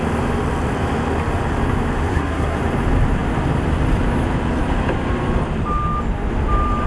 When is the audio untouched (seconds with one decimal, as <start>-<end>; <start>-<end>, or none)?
0.0-2.1; 2.6-6.9